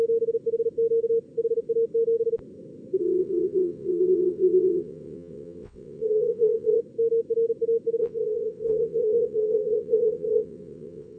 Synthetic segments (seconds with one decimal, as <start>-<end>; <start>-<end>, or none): 3.0-6.8; 8.0-11.2